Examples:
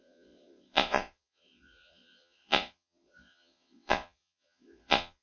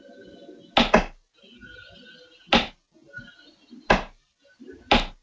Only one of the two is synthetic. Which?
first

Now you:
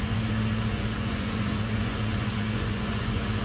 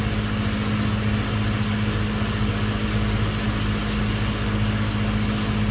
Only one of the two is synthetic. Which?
first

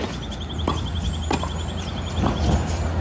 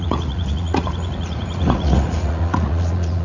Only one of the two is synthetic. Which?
second